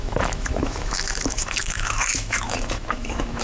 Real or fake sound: fake